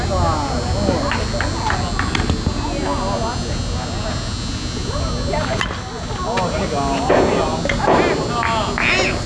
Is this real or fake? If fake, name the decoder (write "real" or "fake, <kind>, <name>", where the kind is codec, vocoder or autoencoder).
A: real